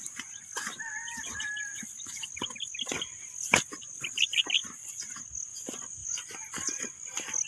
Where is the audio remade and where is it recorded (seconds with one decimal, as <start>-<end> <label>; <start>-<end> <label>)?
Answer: 0.0-7.5 recorded

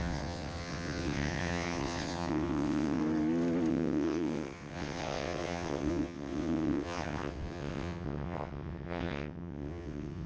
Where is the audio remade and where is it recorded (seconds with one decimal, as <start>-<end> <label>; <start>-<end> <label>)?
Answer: 0.0-3.0 remade; 3.0-3.7 recorded; 3.7-10.3 remade

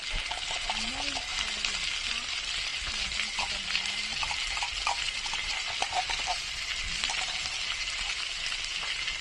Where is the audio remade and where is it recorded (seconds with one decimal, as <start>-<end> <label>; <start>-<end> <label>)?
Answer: 0.0-9.2 recorded